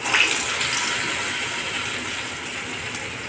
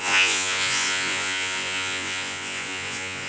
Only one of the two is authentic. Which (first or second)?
first